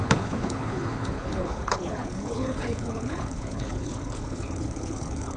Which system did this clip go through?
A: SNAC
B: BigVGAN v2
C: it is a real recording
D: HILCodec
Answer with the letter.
D